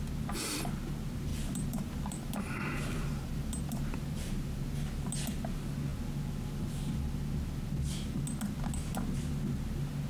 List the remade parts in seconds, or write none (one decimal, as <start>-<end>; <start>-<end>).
1.3-4.6